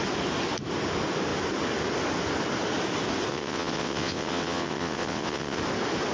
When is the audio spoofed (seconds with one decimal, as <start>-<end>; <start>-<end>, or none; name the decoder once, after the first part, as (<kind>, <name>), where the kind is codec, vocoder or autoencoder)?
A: 3.3-5.6 (vocoder, WaveNeXt)